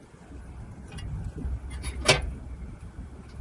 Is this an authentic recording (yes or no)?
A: yes